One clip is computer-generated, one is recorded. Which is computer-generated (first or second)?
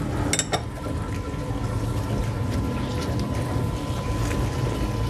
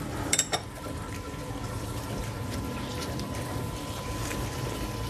second